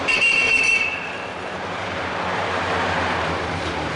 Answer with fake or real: fake